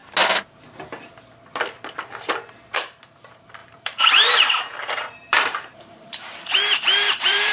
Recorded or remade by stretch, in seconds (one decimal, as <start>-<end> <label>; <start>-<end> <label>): 0.0-2.7 recorded; 2.7-7.5 remade

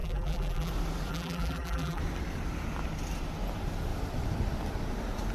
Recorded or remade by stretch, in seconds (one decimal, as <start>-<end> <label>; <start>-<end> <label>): 0.0-0.7 remade; 0.7-1.1 recorded; 1.1-2.0 remade; 2.0-5.3 recorded

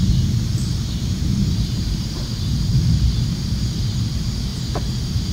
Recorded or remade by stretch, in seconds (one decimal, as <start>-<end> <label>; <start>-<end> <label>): 0.0-0.5 recorded; 0.5-3.0 remade; 3.0-4.5 recorded; 4.5-5.3 remade

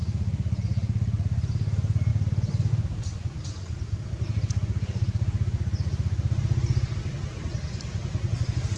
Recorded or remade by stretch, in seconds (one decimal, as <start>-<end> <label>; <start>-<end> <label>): 0.0-2.1 recorded; 2.1-2.7 remade; 2.7-8.8 recorded

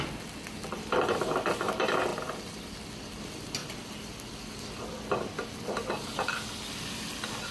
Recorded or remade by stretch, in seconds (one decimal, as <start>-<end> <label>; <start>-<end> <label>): 0.0-7.5 recorded

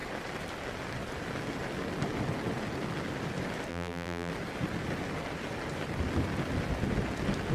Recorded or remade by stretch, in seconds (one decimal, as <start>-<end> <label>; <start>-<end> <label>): 0.0-3.7 recorded; 3.7-4.3 remade; 4.3-7.5 recorded

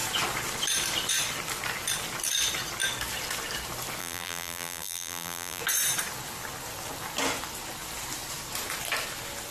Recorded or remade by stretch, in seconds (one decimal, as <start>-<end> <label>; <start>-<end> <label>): 0.0-4.0 recorded; 4.0-5.6 remade; 5.6-9.5 recorded

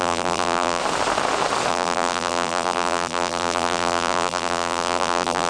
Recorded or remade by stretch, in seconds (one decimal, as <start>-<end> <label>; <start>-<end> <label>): 0.0-0.8 remade; 0.8-1.7 recorded; 1.7-5.5 remade